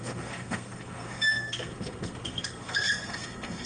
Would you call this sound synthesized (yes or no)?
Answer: yes